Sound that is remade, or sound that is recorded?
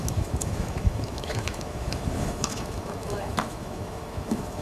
remade